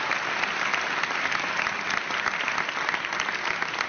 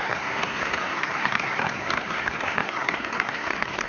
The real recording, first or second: first